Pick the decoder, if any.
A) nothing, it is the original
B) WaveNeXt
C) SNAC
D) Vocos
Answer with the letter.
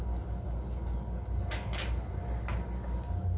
A